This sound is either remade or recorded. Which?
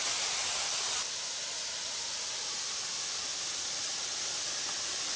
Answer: recorded